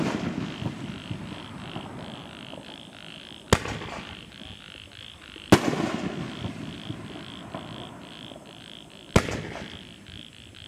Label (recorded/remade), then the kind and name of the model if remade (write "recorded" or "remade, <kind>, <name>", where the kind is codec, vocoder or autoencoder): recorded